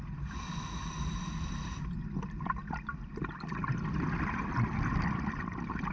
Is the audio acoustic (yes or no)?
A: yes